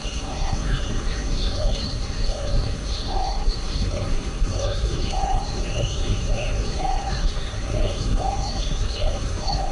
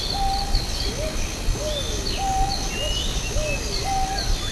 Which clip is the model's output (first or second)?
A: first